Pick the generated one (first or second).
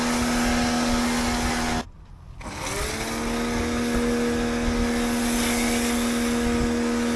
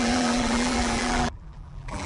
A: second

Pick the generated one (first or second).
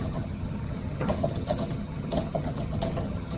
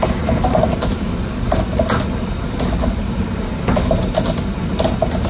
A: first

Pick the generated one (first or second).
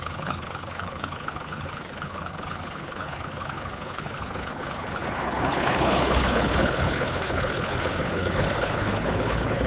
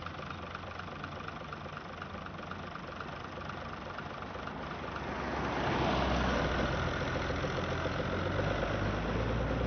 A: first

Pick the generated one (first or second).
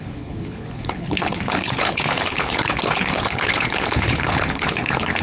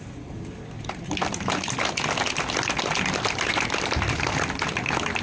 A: first